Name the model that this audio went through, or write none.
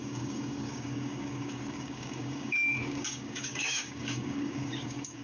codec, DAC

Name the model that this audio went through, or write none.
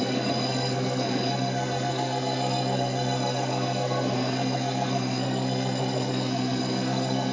codec, SNAC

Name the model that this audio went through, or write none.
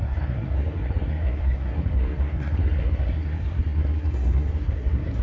codec, SNAC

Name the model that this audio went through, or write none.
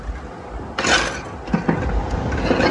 none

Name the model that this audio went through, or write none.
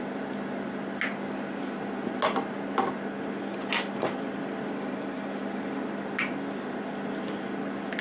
none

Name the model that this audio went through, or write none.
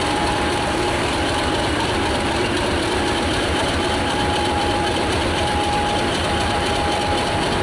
vocoder, BigVGAN v2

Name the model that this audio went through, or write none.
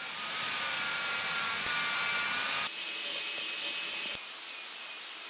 none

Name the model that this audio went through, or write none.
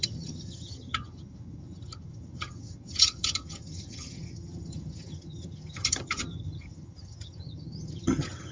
vocoder, HiFi-GAN